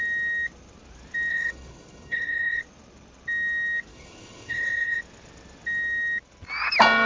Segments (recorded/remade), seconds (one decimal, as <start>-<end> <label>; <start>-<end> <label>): 0.0-1.3 recorded; 1.3-2.6 remade; 2.6-3.9 recorded; 3.9-5.0 remade; 5.0-7.1 recorded